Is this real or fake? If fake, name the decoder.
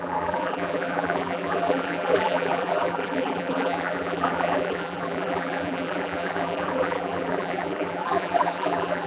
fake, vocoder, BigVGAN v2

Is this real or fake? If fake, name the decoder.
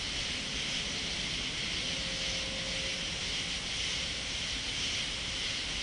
real